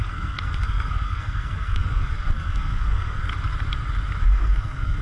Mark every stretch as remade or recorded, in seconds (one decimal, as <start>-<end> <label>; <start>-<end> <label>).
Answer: 0.0-3.3 remade; 3.3-4.2 recorded; 4.2-5.0 remade